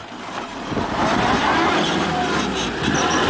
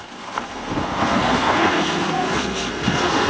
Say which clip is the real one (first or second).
first